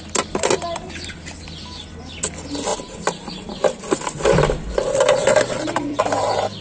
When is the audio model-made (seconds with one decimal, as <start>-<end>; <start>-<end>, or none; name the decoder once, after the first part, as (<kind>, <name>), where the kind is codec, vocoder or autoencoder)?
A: 2.7-4.7 (vocoder, BigVGAN v2); 5.2-6.0